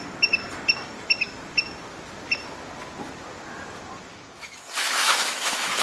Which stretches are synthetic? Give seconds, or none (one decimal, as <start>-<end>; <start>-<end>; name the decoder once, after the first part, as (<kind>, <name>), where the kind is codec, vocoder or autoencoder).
4.1-5.8 (autoencoder, DAC-VAE)